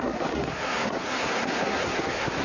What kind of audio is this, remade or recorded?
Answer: remade